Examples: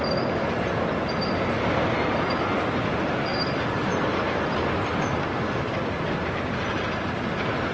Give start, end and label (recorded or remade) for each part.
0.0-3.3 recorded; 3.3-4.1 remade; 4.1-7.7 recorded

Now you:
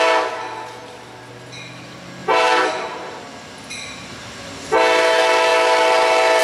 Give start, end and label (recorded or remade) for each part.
0.0-2.2 recorded; 2.2-3.2 remade; 3.2-6.4 recorded

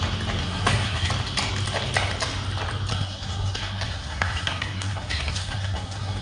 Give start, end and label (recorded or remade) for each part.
0.0-0.4 recorded; 0.4-1.1 remade; 1.1-2.9 recorded; 2.9-6.2 remade

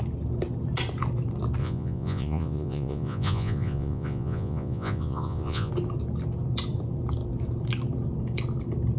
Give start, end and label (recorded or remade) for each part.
0.0-1.6 recorded; 1.6-5.7 remade; 5.7-9.0 recorded

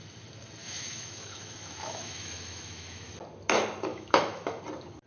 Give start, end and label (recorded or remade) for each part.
0.0-0.6 recorded; 0.6-3.1 remade; 3.1-3.9 recorded; 3.9-4.6 remade; 4.6-5.1 recorded

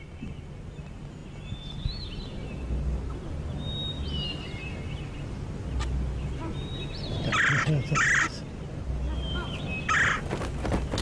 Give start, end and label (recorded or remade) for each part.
0.0-11.0 recorded